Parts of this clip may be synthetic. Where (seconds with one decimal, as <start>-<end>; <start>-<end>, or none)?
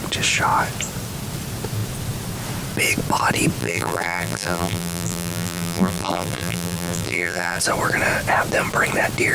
3.6-7.6